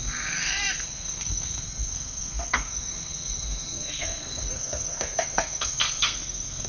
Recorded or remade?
remade